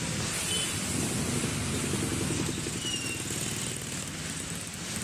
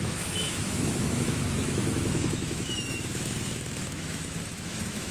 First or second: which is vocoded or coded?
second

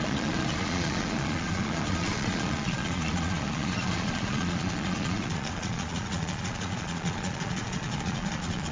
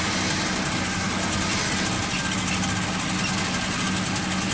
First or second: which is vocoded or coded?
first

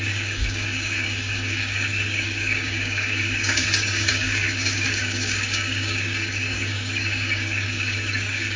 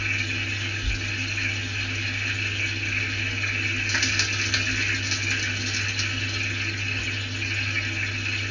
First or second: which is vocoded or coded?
first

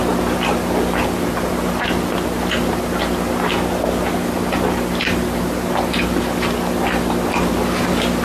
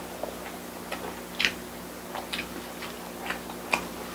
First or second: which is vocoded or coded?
first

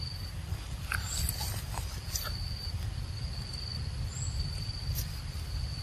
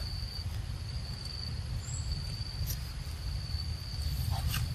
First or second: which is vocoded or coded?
first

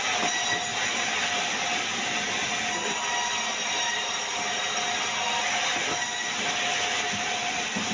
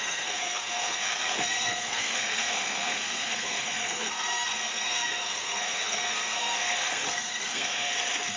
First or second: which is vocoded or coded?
second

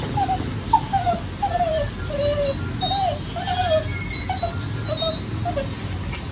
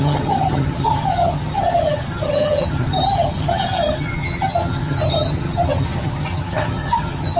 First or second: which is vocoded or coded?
second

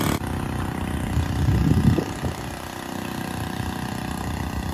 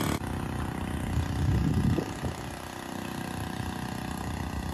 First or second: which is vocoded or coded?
first